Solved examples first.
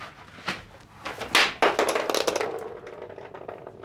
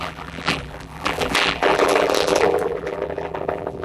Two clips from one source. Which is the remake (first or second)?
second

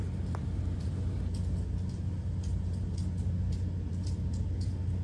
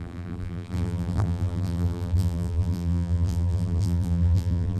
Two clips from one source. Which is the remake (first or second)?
second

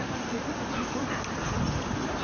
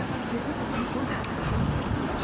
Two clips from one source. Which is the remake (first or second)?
first